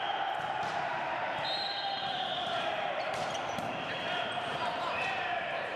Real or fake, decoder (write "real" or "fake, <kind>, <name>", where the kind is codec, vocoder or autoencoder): fake, vocoder, BigVGAN v2